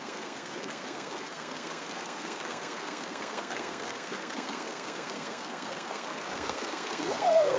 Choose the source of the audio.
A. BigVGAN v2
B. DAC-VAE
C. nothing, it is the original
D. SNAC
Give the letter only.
D